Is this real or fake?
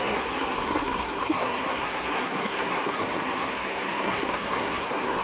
fake